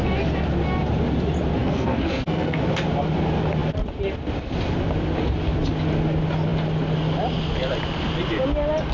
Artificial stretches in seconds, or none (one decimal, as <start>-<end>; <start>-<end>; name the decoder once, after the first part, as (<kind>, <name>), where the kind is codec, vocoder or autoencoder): 1.6-2.6 (codec, SNAC)